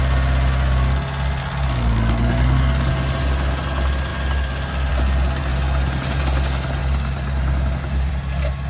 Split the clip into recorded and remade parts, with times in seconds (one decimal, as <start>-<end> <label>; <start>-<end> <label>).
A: 0.0-1.4 recorded; 1.4-2.9 remade; 2.9-8.7 recorded